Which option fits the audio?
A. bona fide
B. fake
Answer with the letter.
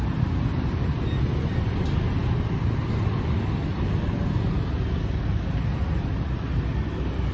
A